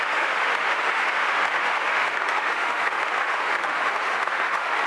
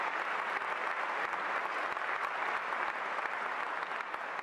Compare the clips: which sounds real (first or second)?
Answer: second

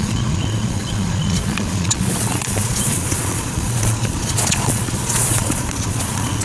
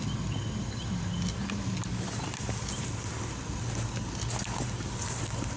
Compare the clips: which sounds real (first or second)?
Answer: second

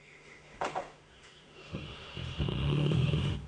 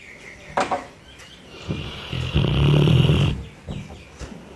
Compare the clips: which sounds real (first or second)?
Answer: second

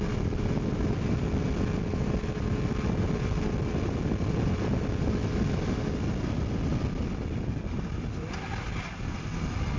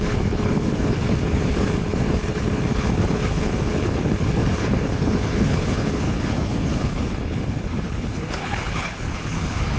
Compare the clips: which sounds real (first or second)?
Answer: first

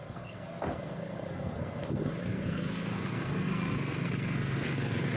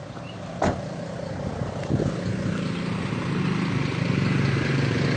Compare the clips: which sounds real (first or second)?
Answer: second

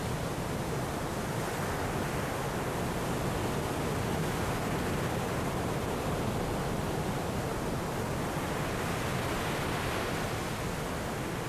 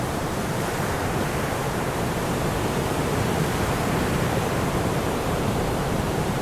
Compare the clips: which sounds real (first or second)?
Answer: first